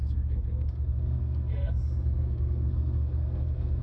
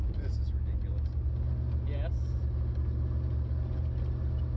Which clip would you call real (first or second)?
second